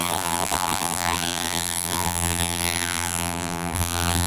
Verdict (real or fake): fake